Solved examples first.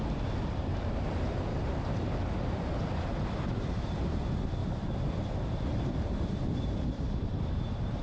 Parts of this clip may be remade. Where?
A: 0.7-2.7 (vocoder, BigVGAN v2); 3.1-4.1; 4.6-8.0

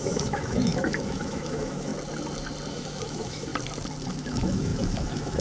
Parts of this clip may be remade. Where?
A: 0.0-1.9 (autoencoder, DAC-VAE); 2.7-3.5; 4.1-5.4

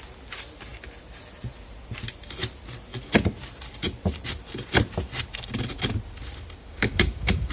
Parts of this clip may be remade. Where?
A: 6.6-7.5 (codec, DAC)

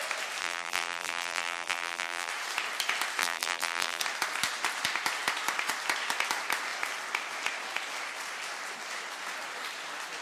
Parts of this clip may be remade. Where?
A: 0.4-2.3 (vocoder, BigVGAN v2); 3.2-4.0

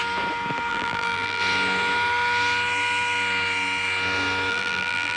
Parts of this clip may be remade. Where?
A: 0.7-1.4 (vocoder, BigVGAN v2); 4.5-5.2

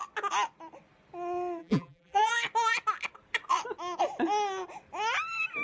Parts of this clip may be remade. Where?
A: 1.6-2.3 (vocoder, BigVGAN v2)

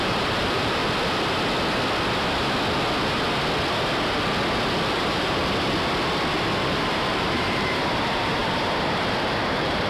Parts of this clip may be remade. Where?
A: 0.0-0.8 (vocoder, BigVGAN v2); 4.9-5.4; 6.6-9.9

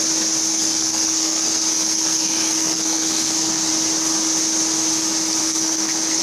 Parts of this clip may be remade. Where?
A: 0.5-3.7 (codec, SNAC); 5.4-6.2